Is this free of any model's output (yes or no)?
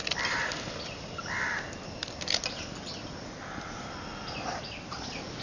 yes